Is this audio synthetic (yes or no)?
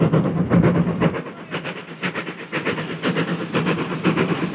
no